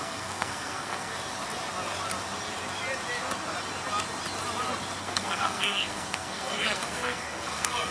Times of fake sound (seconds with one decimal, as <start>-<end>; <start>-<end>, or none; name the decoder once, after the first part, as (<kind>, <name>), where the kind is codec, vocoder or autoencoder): 0.0-1.1 (codec, SNAC); 5.0-7.9

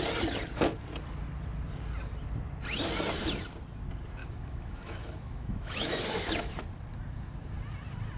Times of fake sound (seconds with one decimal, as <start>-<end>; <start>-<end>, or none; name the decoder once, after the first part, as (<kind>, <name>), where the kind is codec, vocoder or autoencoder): 4.2-6.6 (autoencoder, DAC-VAE)

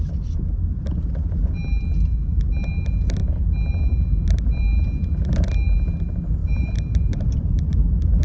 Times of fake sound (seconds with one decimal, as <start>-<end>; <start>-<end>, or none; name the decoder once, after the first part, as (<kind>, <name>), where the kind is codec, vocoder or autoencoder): 6.4-7.6 (vocoder, BigVGAN v2)